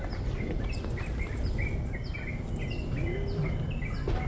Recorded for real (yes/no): yes